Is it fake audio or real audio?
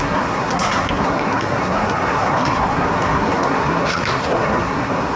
fake